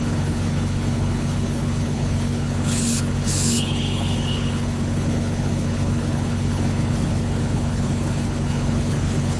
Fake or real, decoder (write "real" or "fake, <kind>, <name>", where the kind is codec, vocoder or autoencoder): fake, codec, HILCodec